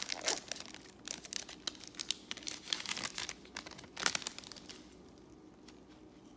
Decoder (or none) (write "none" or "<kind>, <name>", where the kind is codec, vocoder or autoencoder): none